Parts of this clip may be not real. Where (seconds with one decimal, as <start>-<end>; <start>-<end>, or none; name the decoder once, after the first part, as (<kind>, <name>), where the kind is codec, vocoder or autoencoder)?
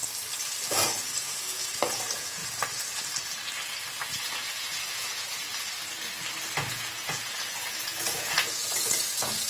0.7-2.4 (vocoder, Vocos); 4.5-5.4; 6.7-9.5